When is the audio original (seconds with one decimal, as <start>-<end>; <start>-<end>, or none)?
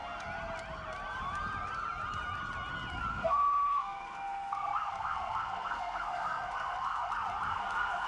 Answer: 0.0-3.1; 7.1-7.5